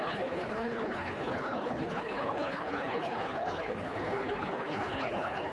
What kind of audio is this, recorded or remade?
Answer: remade